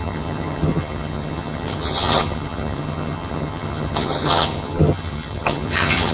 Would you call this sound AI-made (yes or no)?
yes